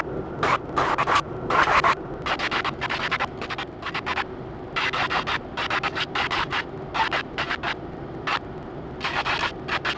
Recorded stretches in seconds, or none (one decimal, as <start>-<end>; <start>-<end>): 0.0-10.0